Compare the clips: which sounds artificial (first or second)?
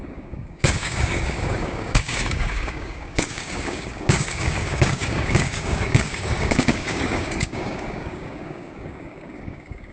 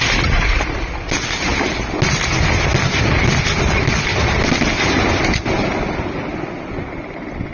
first